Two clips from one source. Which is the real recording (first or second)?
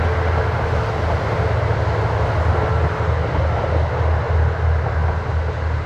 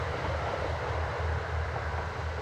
first